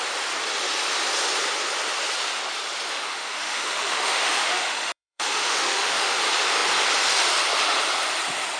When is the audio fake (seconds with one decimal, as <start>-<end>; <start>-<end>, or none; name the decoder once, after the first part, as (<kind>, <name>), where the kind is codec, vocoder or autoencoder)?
2.9-6.1 (autoencoder, DAC-VAE)